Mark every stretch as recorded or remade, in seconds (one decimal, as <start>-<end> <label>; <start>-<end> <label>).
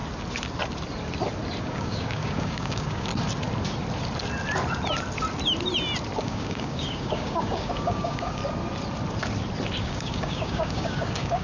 0.0-1.6 recorded; 1.6-3.1 remade; 3.1-6.2 recorded; 6.2-8.4 remade; 8.4-9.8 recorded; 9.8-11.4 remade